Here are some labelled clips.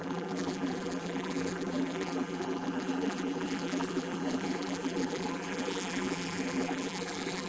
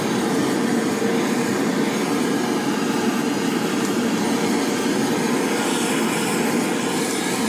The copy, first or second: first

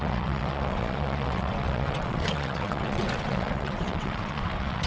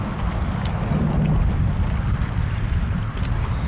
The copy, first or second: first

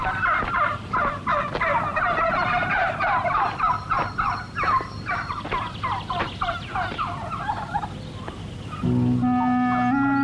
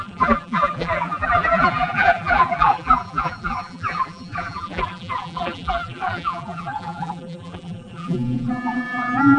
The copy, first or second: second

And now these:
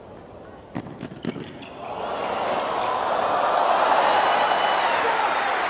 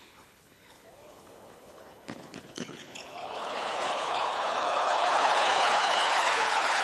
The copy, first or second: second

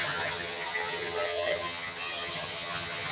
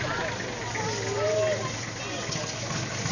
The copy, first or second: first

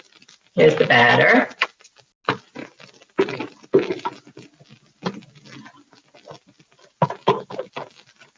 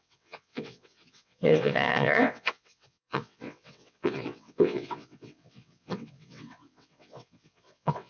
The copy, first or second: second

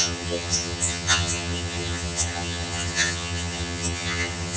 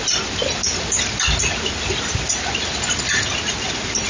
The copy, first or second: first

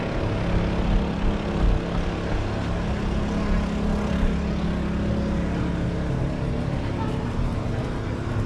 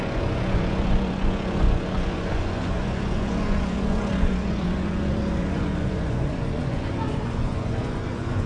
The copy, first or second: second